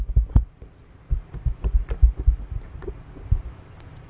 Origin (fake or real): real